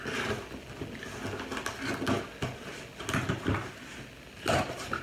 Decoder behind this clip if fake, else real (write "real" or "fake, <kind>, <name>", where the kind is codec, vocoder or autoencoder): real